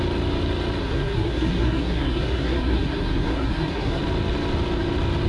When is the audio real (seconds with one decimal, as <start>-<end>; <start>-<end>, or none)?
0.0-0.8; 4.0-5.3